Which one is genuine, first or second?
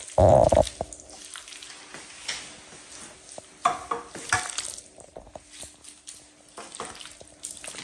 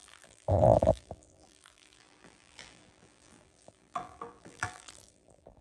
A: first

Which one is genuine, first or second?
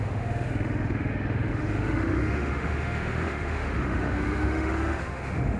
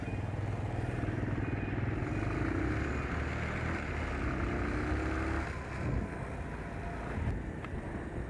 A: second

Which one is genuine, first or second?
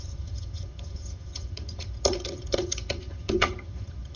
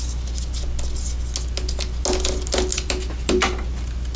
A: second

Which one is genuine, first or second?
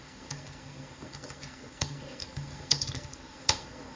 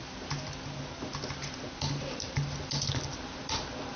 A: second